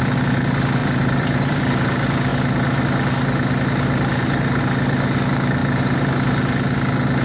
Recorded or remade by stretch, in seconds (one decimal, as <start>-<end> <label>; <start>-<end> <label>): 0.0-0.8 recorded; 0.8-1.7 remade; 1.7-5.6 recorded; 5.6-6.1 remade; 6.1-7.2 recorded